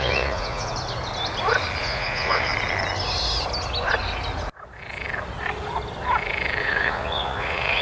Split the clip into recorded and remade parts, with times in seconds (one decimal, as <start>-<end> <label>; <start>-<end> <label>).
0.0-0.7 remade; 0.7-1.8 recorded; 1.8-2.5 remade; 2.5-6.6 recorded; 6.6-7.8 remade

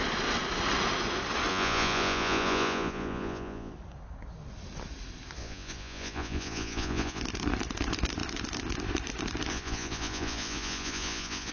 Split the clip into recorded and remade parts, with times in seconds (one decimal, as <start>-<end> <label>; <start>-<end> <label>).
0.0-1.5 recorded; 1.5-3.7 remade; 3.7-5.4 recorded; 5.4-7.2 remade; 7.2-9.5 recorded; 9.5-11.5 remade

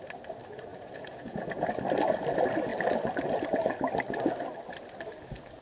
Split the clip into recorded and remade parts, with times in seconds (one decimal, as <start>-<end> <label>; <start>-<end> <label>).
0.0-0.7 recorded; 0.7-1.7 remade; 1.7-5.6 recorded